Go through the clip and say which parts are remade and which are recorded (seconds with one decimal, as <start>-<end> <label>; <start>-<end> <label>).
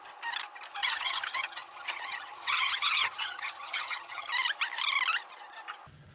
0.0-0.8 recorded; 0.8-4.3 remade; 4.3-6.1 recorded